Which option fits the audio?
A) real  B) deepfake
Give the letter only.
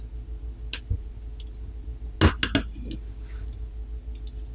A